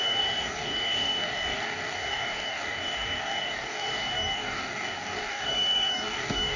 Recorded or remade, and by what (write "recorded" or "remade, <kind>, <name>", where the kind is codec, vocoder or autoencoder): remade, codec, DAC